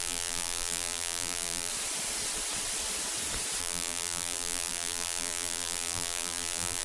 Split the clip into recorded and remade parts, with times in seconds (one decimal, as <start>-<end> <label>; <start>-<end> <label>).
0.0-1.7 remade; 1.7-3.6 recorded; 3.6-6.8 remade